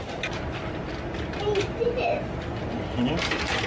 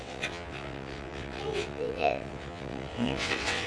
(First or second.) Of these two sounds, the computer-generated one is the second